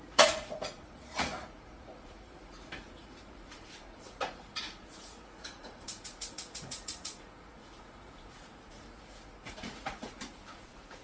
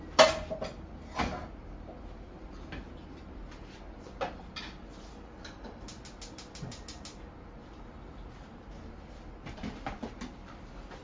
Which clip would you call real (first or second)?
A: second